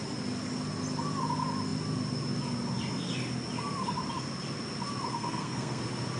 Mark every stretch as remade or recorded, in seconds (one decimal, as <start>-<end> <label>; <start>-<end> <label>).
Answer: 0.0-5.1 recorded; 5.1-5.8 remade; 5.8-6.2 recorded